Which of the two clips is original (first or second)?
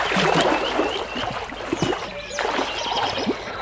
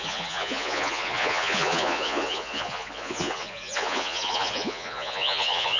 first